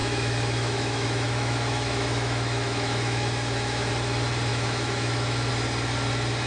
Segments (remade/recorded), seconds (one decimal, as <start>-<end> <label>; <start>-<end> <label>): 0.0-3.9 remade; 3.9-4.5 recorded; 4.5-5.5 remade; 5.5-6.5 recorded